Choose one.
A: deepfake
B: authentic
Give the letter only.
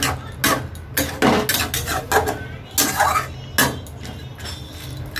B